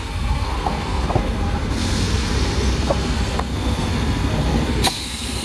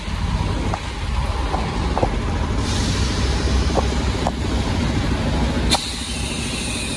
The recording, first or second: second